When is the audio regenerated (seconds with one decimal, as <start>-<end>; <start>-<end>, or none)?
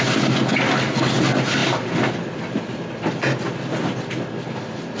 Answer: none